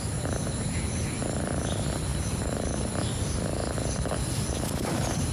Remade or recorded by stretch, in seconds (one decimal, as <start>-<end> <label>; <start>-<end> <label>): 0.0-5.3 recorded